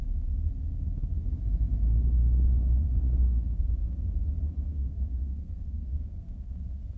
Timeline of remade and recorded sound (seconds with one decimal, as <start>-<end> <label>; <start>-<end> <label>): 0.0-4.7 recorded; 4.7-6.5 remade; 6.5-7.0 recorded